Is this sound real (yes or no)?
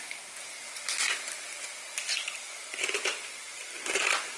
yes